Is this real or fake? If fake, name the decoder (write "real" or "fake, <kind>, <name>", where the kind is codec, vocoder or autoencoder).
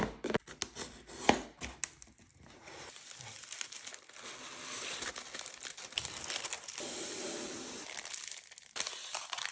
real